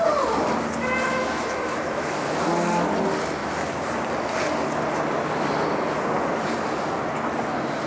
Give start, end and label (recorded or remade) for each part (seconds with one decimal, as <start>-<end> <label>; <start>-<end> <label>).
0.0-1.2 recorded; 1.2-2.4 remade; 2.4-7.9 recorded